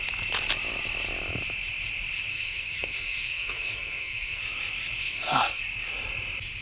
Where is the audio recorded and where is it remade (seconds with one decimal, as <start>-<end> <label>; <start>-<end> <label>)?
0.0-2.3 recorded; 2.3-4.4 remade; 4.4-5.0 recorded; 5.0-5.6 remade; 5.6-6.6 recorded